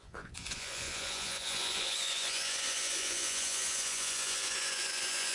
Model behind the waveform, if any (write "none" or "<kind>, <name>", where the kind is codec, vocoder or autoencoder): vocoder, Vocos